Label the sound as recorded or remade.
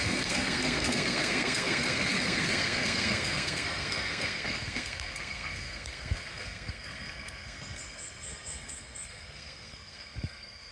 remade